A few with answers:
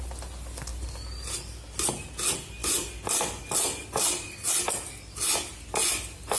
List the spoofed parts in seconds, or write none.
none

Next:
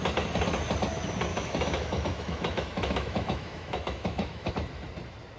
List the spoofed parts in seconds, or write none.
1.3-4.5 (autoencoder, DAC-VAE)

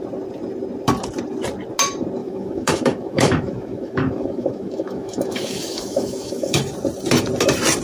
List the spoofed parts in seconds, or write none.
2.2-6.6 (autoencoder, DAC-VAE)